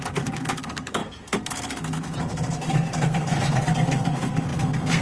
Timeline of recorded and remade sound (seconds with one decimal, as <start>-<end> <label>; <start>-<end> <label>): 0.0-5.0 remade

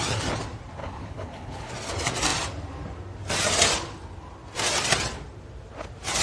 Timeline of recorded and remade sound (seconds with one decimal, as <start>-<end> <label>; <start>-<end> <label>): 0.0-0.8 recorded; 0.8-1.7 remade; 1.7-6.2 recorded

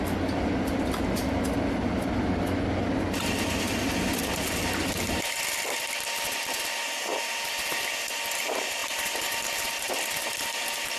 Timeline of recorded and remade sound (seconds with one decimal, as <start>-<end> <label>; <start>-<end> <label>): 0.0-11.0 recorded

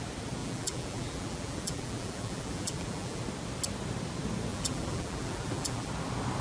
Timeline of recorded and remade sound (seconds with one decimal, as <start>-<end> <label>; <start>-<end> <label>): 0.0-0.4 recorded; 0.4-3.2 remade; 3.2-4.5 recorded; 4.5-5.9 remade; 5.9-6.4 recorded

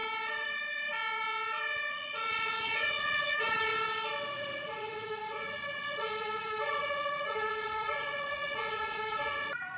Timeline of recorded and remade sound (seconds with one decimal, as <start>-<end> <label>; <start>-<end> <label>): 0.0-1.9 recorded; 1.9-3.7 remade; 3.7-4.3 recorded; 4.3-9.8 remade